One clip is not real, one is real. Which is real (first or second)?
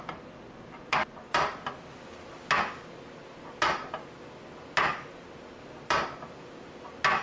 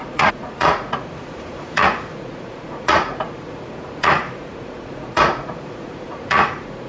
first